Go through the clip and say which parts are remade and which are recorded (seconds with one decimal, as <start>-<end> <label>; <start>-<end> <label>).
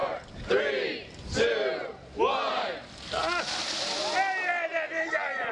0.0-5.5 recorded